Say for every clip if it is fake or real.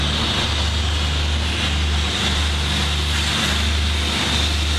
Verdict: real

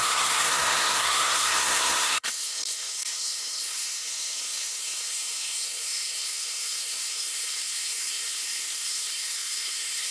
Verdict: fake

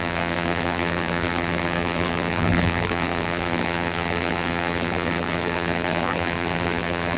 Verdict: fake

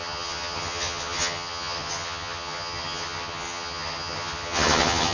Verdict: fake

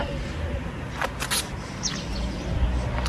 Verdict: real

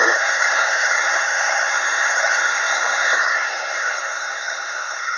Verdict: fake